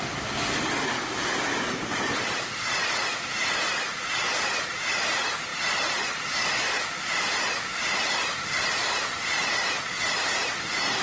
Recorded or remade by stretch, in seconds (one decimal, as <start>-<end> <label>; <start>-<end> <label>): 0.0-11.0 recorded